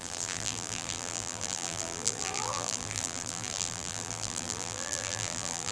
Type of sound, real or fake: fake